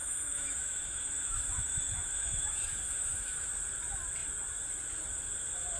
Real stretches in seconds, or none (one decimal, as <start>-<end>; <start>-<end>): 3.5-5.8